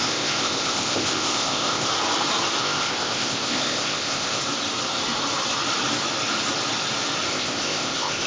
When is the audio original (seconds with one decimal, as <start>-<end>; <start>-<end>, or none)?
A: 1.9-2.6; 4.4-7.3